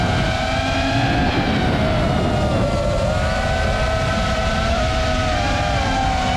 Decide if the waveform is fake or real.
real